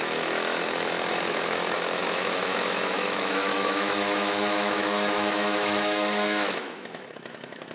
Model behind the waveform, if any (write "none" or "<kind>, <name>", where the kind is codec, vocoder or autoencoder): autoencoder, DAC-VAE